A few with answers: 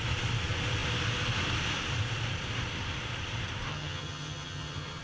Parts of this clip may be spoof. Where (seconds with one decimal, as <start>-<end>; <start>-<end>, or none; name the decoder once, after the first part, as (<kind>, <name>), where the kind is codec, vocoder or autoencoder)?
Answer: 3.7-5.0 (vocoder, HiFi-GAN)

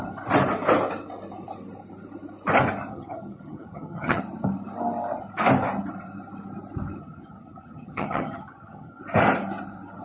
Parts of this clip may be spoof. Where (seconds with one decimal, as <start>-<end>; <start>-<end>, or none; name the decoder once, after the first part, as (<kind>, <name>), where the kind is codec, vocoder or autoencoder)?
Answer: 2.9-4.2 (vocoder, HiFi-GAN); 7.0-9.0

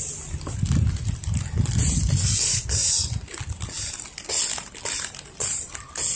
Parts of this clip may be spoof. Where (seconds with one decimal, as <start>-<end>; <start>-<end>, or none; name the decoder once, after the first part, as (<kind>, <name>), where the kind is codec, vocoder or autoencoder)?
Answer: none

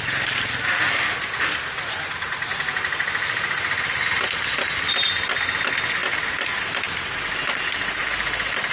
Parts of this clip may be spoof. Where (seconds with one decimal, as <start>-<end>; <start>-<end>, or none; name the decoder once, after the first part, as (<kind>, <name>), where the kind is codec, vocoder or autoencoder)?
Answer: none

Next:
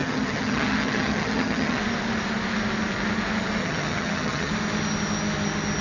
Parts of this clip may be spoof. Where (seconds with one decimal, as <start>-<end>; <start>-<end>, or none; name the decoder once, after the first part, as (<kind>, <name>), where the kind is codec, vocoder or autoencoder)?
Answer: 0.0-1.8 (vocoder, HiFi-GAN); 3.6-4.5

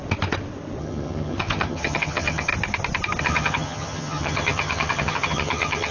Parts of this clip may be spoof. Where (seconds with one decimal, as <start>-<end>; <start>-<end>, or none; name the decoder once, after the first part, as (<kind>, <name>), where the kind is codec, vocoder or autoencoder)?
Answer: 0.8-2.5 (vocoder, HiFi-GAN); 3.2-5.9